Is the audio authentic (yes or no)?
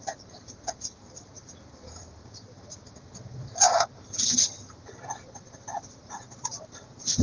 no